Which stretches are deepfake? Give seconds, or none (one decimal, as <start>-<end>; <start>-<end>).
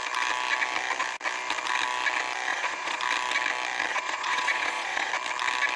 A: 2.5-3.0; 3.9-5.1